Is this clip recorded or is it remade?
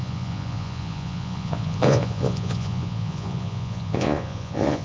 remade